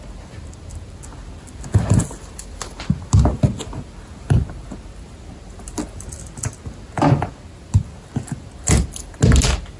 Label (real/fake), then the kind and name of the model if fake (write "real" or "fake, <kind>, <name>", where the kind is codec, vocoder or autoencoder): real